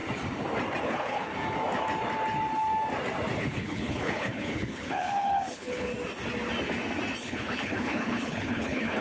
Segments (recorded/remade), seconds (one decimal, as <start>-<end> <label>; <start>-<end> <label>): 0.0-0.8 recorded; 0.8-1.3 remade; 1.3-3.4 recorded; 3.4-5.9 remade; 5.9-7.2 recorded; 7.2-9.0 remade

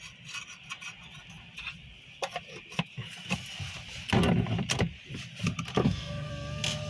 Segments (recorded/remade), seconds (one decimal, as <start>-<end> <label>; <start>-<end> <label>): 0.0-5.8 recorded; 5.8-6.3 remade; 6.3-6.9 recorded

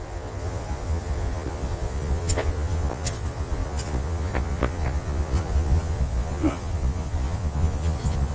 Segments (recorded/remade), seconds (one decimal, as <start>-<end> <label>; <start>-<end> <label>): 0.0-8.3 remade

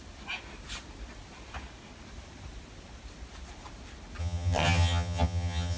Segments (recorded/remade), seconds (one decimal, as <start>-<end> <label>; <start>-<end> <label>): 0.0-4.2 recorded; 4.2-5.8 remade

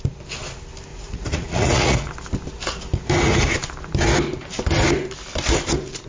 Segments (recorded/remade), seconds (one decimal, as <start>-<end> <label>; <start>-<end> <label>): 0.0-0.9 recorded; 0.9-2.1 remade; 2.1-6.1 recorded